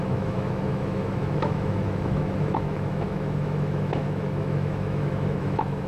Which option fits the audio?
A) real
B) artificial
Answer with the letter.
B